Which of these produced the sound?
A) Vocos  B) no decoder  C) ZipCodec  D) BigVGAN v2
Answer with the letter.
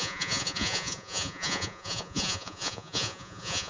A